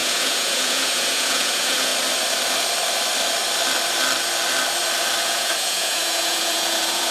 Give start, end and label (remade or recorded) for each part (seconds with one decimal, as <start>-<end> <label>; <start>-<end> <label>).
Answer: 0.0-1.9 remade; 1.9-5.2 recorded; 5.2-7.1 remade